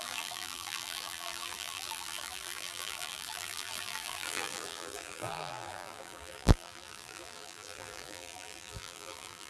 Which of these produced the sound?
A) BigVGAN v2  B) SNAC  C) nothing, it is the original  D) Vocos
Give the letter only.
A